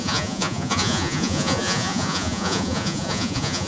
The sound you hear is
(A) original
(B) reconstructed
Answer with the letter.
B